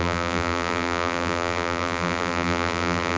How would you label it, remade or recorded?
remade